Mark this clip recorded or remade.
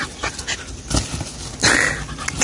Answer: recorded